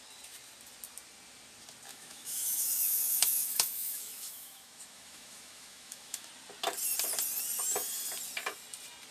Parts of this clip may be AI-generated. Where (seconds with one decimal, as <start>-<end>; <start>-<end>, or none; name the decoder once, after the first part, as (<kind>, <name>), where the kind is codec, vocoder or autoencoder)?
1.9-6.3 (autoencoder, DAC-VAE)